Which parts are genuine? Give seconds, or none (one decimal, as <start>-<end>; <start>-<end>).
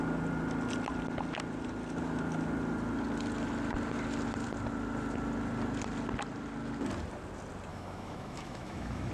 0.0-7.7